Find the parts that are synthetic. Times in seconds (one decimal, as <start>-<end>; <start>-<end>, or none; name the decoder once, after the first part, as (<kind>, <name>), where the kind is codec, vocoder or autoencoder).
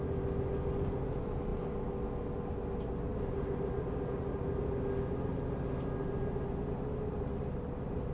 none